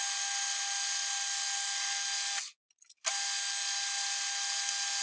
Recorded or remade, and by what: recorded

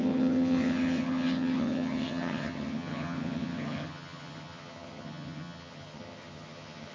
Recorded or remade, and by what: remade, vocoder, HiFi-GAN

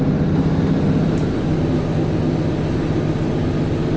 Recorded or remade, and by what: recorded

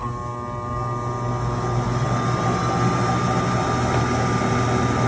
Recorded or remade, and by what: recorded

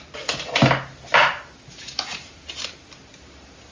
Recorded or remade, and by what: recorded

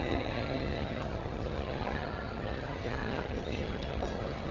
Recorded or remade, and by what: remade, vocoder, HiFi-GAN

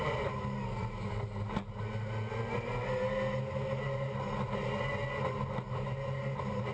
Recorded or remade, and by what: recorded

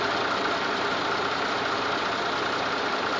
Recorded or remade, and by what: recorded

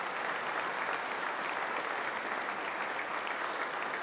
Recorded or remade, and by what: recorded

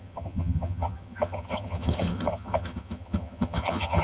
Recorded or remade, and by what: remade, vocoder, HiFi-GAN